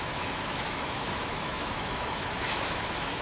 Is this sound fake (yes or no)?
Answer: yes